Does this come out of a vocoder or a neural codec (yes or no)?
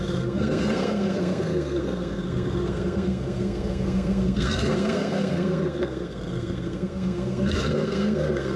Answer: yes